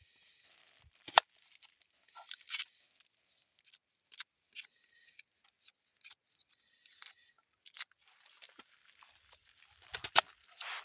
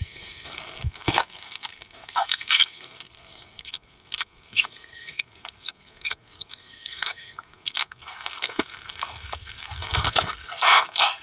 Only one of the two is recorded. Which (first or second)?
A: first